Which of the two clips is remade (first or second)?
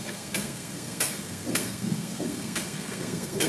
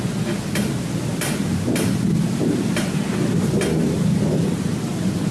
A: first